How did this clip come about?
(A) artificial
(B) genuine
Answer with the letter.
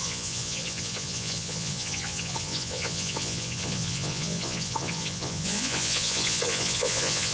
A